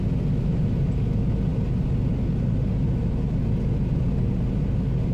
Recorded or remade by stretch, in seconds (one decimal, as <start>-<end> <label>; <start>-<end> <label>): 0.0-5.1 recorded